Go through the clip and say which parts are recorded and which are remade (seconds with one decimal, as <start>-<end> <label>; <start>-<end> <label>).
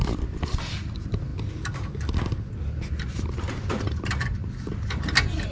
0.0-1.3 remade; 1.3-2.6 recorded; 2.6-5.5 remade